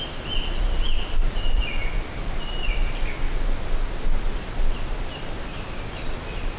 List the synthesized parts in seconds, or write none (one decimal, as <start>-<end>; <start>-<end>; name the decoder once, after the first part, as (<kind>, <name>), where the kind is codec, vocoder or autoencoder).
none